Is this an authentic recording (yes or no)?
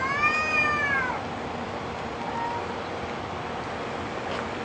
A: yes